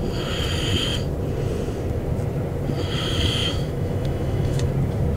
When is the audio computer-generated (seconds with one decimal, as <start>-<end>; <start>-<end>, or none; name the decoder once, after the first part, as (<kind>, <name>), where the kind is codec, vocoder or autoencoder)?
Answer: 3.4-4.7 (autoencoder, DAC-VAE)